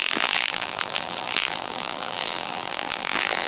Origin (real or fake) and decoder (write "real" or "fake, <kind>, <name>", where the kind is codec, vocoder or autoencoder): fake, vocoder, BigVGAN v2